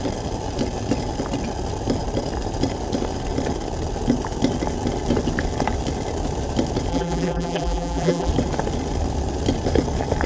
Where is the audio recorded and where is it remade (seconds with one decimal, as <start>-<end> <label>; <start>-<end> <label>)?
0.0-6.9 recorded; 6.9-8.3 remade; 8.3-10.3 recorded